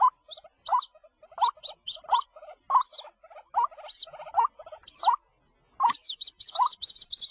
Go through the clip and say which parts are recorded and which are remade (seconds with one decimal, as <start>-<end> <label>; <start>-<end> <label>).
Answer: 0.0-7.3 recorded